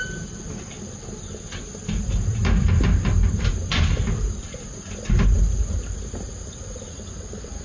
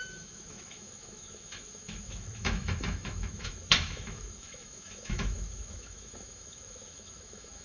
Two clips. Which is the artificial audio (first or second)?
second